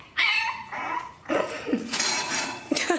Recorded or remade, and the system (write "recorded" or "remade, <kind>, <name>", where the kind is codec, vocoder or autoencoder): remade, vocoder, Vocos